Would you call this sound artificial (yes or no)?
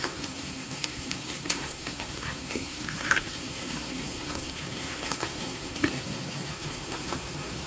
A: yes